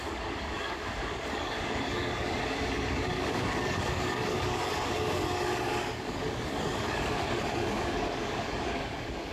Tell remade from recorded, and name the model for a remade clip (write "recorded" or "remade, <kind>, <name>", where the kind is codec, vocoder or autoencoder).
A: remade, codec, DAC